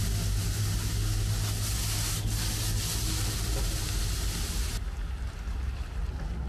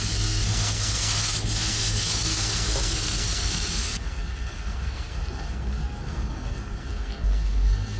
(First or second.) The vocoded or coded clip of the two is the second